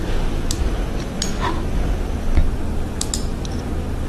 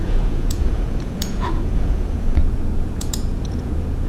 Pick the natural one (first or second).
first